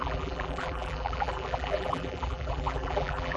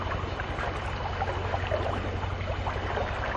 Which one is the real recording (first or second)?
second